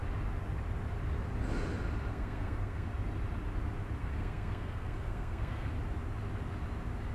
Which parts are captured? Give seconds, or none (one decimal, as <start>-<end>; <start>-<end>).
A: 0.0-2.1; 2.9-4.0; 5.7-7.1